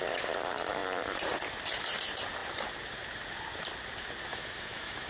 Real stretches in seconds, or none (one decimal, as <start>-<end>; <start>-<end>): 0.0-4.3